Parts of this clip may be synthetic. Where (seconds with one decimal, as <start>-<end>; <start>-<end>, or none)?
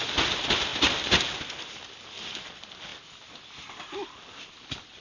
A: none